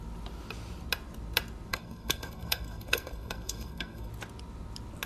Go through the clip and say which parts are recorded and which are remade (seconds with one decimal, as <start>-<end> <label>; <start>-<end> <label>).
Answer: 0.0-1.7 recorded; 1.7-4.1 remade; 4.1-5.1 recorded